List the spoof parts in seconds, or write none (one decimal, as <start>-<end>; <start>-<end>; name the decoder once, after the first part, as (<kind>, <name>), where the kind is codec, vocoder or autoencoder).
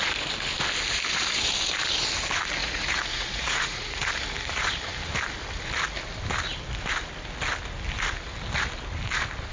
2.6-4.1 (vocoder, Vocos)